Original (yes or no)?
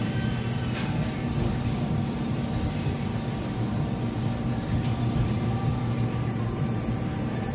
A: no